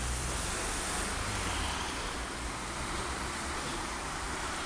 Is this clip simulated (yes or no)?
yes